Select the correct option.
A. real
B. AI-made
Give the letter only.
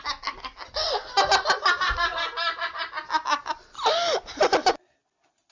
A